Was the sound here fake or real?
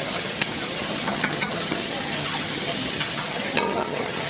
fake